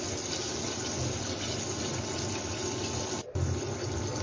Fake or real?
real